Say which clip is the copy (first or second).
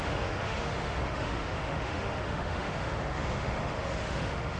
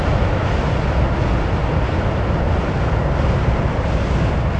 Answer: first